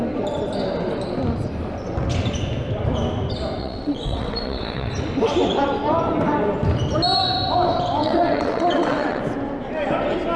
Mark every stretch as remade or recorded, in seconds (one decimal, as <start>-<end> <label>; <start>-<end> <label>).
0.0-3.6 recorded; 3.6-4.9 remade; 4.9-8.0 recorded; 8.0-9.2 remade; 9.2-10.4 recorded

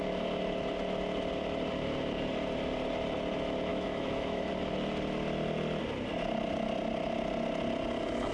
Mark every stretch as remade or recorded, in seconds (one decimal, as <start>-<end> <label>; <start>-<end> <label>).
0.0-3.7 recorded; 3.7-4.5 remade; 4.5-8.3 recorded

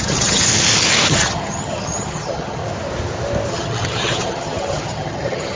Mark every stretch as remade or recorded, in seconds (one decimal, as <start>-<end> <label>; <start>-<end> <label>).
0.0-0.4 remade; 0.4-1.1 recorded; 1.1-2.6 remade; 2.6-3.5 recorded; 3.5-5.6 remade

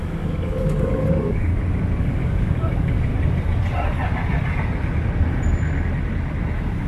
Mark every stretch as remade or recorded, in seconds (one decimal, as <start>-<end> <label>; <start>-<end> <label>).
0.0-1.5 remade; 1.5-2.0 recorded; 2.0-3.1 remade; 3.1-6.9 recorded

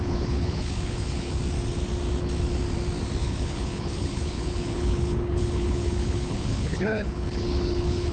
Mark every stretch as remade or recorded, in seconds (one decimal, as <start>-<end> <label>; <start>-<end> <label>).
0.0-1.4 remade; 1.4-3.2 recorded; 3.2-8.1 remade

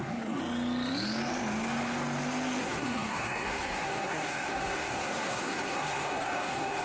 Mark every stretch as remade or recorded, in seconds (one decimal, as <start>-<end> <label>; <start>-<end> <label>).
0.0-0.4 remade; 0.4-2.6 recorded; 2.6-6.8 remade